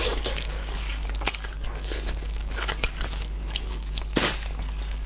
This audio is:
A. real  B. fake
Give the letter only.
B